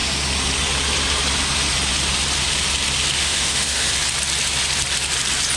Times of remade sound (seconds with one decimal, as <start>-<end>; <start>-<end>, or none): 3.2-3.9